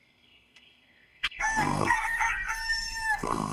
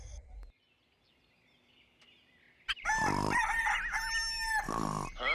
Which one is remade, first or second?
first